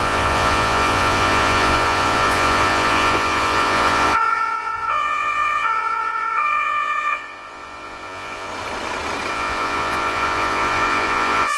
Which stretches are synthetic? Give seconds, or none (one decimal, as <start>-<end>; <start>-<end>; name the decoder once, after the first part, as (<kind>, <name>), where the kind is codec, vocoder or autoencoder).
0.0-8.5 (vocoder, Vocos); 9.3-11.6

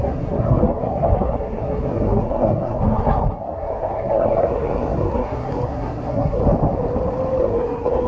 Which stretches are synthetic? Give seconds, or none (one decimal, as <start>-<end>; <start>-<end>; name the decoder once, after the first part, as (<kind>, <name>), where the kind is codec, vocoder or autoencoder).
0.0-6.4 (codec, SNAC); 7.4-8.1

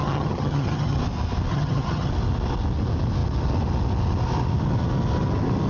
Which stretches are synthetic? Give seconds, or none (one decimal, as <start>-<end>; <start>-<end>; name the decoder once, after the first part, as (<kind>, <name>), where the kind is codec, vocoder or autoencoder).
0.0-1.0 (vocoder, HiFi-GAN); 1.5-2.1

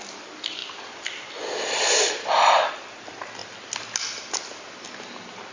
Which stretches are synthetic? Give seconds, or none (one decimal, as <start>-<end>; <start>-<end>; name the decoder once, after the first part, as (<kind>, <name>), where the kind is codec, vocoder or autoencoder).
none

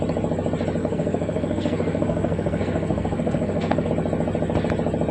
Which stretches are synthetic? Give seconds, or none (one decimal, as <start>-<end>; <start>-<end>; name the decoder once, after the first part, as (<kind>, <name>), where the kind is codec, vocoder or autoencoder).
0.8-3.9 (codec, SNAC)

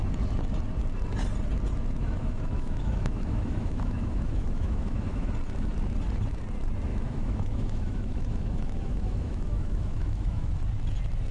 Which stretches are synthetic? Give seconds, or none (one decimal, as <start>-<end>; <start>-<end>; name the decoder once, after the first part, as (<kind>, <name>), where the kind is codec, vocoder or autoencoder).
2.0-5.3 (autoencoder, DAC-VAE); 6.9-10.5

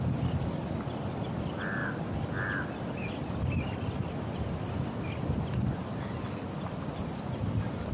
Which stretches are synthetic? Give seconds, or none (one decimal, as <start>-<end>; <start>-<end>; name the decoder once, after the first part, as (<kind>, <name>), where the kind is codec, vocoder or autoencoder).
none

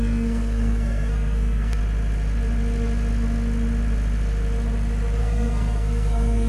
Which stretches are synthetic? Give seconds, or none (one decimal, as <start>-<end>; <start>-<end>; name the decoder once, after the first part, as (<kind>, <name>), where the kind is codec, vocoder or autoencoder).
0.0-1.8 (codec, SNAC); 5.2-6.5